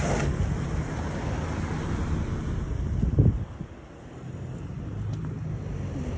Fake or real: real